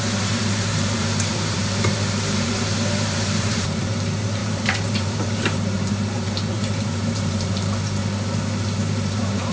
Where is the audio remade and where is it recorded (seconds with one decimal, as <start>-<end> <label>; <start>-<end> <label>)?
0.0-8.0 remade; 8.0-8.6 recorded; 8.6-9.5 remade